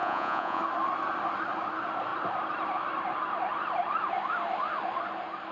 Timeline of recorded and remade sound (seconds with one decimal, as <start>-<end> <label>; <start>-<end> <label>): 0.0-0.6 remade; 0.6-5.5 recorded

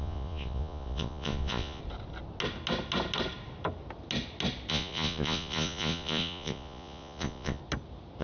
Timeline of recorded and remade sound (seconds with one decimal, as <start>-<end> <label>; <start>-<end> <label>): 0.0-1.8 remade; 1.8-4.7 recorded; 4.7-7.6 remade; 7.6-8.2 recorded

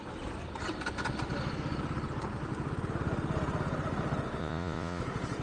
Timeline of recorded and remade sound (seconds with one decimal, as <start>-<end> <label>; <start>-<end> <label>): 0.0-4.4 recorded; 4.4-5.0 remade; 5.0-5.4 recorded